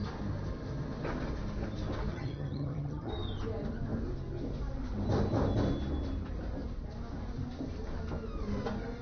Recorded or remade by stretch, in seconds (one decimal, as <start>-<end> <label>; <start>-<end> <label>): 0.0-2.1 recorded; 2.1-3.1 remade; 3.1-9.0 recorded